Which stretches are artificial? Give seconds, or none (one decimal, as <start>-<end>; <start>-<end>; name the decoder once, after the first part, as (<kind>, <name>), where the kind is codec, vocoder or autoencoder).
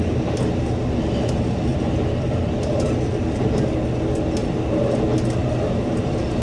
1.7-2.8 (vocoder, BigVGAN v2); 4.4-5.0